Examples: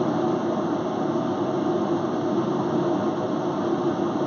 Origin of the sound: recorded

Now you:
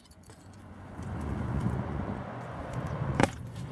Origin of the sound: remade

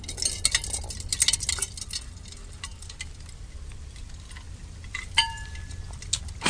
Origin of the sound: recorded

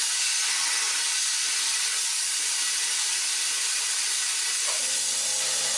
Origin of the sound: recorded